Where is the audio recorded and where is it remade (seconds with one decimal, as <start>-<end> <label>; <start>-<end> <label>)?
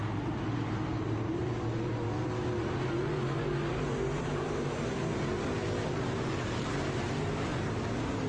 0.0-1.4 remade; 1.4-4.2 recorded; 4.2-7.5 remade; 7.5-8.3 recorded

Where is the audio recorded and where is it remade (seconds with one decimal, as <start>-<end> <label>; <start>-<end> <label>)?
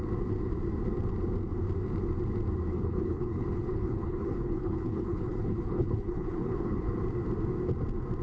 0.0-2.7 recorded; 2.7-6.9 remade; 6.9-8.2 recorded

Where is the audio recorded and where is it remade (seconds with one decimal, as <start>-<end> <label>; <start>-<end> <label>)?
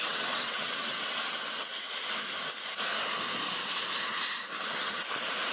0.0-2.0 remade; 2.0-5.5 recorded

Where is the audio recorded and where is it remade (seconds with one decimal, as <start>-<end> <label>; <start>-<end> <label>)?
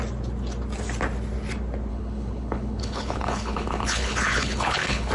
0.0-1.9 recorded; 1.9-5.1 remade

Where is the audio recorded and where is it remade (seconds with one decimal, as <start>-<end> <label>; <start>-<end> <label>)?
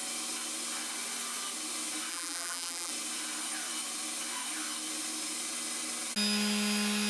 0.0-2.1 recorded; 2.1-2.9 remade; 2.9-7.1 recorded